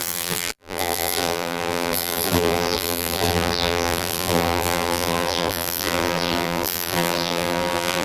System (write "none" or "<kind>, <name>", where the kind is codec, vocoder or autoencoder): vocoder, BigVGAN v2